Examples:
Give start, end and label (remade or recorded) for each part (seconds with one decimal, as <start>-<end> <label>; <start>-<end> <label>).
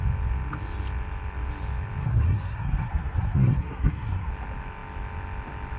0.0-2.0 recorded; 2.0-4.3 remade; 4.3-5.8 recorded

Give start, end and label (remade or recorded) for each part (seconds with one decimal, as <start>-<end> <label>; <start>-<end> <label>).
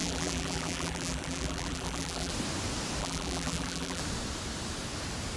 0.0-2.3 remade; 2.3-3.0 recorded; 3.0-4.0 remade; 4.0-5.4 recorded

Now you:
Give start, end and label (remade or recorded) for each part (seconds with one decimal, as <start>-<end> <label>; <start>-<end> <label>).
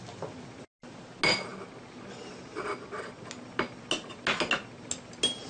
0.0-5.5 recorded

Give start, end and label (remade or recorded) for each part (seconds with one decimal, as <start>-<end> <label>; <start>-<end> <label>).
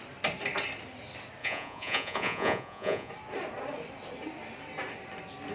0.0-1.4 recorded; 1.4-3.1 remade; 3.1-5.5 recorded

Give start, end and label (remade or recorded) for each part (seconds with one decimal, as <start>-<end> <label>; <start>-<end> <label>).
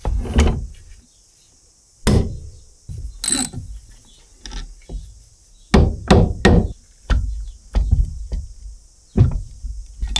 0.0-10.2 recorded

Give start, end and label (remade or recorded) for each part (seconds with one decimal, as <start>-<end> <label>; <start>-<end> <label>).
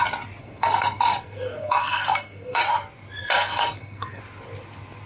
0.0-0.4 recorded; 0.4-2.6 remade; 2.6-3.2 recorded; 3.2-4.2 remade; 4.2-5.1 recorded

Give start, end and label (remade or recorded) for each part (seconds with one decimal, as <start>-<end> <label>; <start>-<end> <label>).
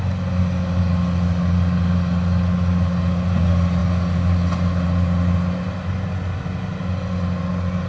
0.0-7.9 recorded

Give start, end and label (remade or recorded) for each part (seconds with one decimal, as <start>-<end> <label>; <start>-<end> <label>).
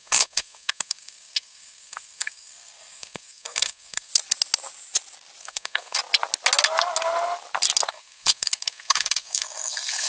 0.0-4.1 remade; 4.1-5.4 recorded; 5.4-6.0 remade; 6.0-7.9 recorded; 7.9-10.1 remade